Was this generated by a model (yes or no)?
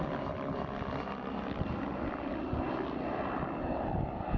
no